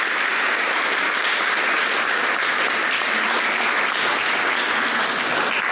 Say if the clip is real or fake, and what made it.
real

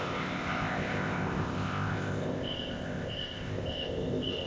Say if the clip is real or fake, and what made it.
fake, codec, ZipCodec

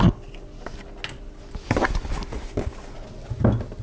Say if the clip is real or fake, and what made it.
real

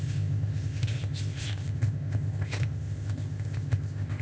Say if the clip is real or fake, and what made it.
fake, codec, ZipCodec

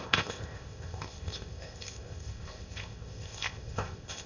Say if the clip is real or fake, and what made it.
fake, codec, ZipCodec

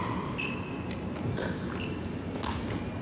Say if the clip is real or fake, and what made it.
real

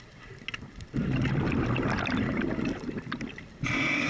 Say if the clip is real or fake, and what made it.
real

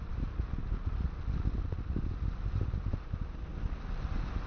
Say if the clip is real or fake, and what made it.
real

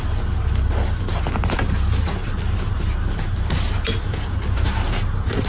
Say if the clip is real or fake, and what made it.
real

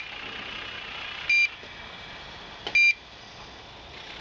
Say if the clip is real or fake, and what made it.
real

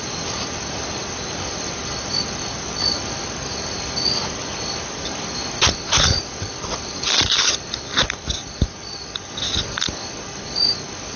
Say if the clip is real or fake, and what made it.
real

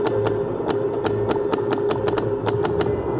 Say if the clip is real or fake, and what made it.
real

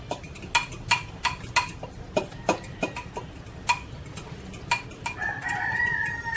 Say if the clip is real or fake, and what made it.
real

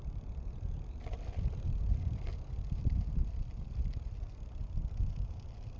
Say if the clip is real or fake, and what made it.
real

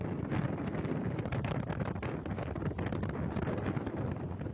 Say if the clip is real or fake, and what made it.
real